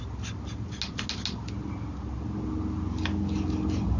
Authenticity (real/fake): real